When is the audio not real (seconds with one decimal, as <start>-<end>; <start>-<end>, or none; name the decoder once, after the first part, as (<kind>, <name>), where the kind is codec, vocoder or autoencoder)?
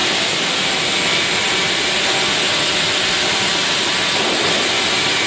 none